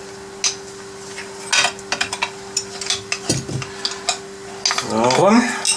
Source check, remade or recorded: recorded